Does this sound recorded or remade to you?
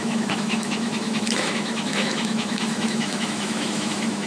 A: remade